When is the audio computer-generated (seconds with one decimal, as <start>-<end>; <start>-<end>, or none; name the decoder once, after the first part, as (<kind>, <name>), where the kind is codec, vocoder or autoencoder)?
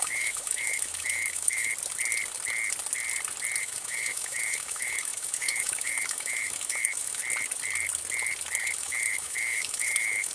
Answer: 0.0-1.7 (autoencoder, DAC-VAE); 3.6-7.2; 8.6-10.3